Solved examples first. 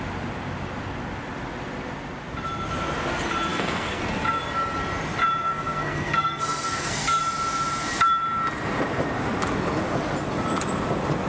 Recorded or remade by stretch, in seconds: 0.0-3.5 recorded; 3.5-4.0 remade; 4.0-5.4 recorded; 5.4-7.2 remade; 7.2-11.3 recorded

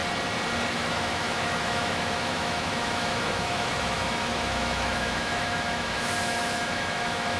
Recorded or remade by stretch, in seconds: 0.0-0.7 recorded; 0.7-7.4 remade

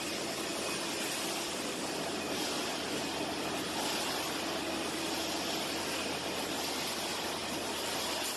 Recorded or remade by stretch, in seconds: 0.0-8.4 recorded

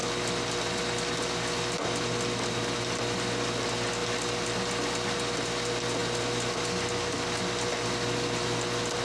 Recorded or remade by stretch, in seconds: 0.0-9.0 recorded

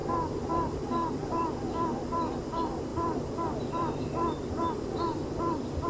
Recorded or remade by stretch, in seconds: 0.0-5.9 recorded

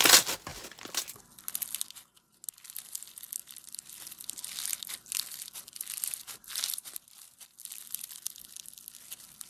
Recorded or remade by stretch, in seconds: 0.0-9.5 recorded

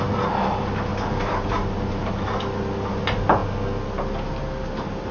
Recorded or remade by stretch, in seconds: 0.0-0.9 recorded; 0.9-2.1 remade; 2.1-5.1 recorded

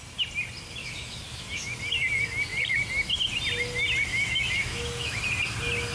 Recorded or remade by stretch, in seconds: 0.0-0.8 recorded; 0.8-1.8 remade; 1.8-4.1 recorded; 4.1-5.2 remade; 5.2-5.9 recorded